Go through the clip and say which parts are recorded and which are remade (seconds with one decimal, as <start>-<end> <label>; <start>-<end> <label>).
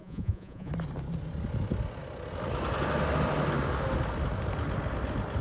0.0-0.7 remade; 0.7-5.4 recorded